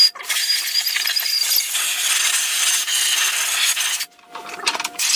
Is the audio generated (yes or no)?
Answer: no